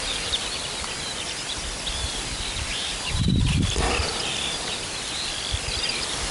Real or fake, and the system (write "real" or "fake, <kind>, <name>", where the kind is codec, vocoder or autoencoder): fake, vocoder, BigVGAN v2